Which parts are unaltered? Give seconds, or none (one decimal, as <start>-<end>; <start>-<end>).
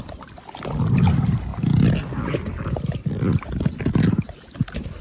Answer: 0.0-5.0